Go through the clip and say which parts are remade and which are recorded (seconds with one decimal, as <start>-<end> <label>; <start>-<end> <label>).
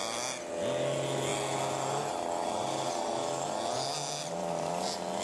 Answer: 0.0-5.2 recorded